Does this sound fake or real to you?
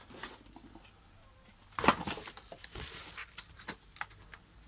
real